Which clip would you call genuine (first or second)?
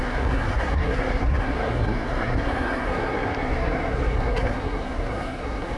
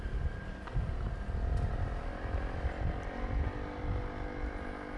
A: second